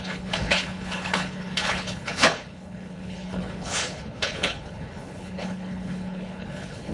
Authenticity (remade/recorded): remade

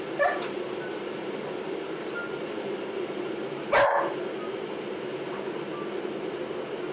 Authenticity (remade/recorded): recorded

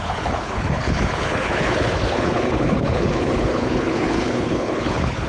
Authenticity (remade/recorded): remade